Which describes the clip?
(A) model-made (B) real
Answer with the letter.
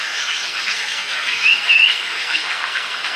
A